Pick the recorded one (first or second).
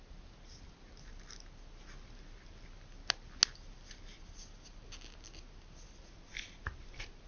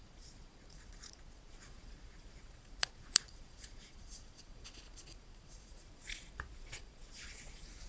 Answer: first